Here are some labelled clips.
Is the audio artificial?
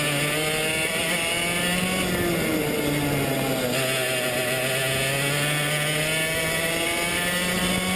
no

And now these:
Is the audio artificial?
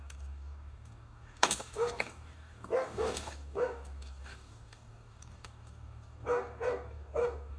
yes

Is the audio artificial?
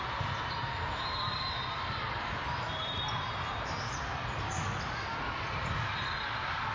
no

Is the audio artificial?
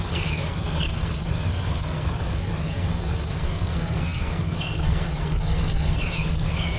yes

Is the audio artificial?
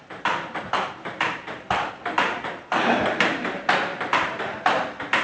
yes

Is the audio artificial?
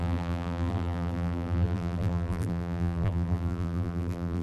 yes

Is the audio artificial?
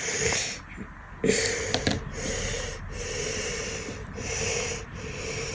no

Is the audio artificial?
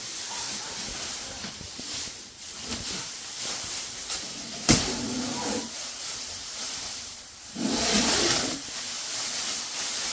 no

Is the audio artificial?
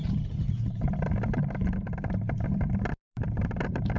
yes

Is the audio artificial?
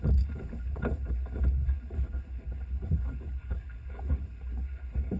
yes